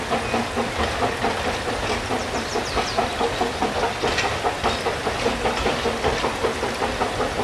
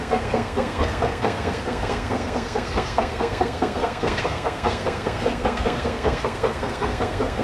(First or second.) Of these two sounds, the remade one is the second